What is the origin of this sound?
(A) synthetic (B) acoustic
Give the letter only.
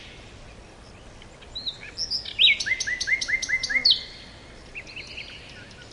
B